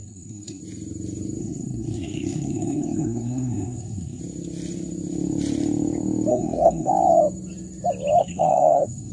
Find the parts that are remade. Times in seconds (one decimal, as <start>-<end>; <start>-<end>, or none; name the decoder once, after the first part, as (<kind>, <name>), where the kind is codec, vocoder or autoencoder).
0.0-0.6 (codec, SNAC); 1.4-4.2; 6.3-6.9; 8.2-9.1